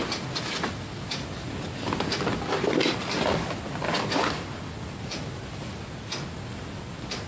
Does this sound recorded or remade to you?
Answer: recorded